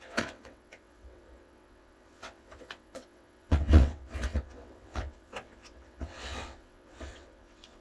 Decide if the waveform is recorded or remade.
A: remade